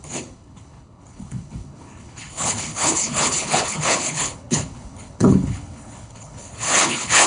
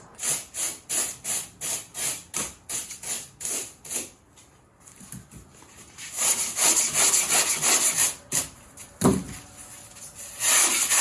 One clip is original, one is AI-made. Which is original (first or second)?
second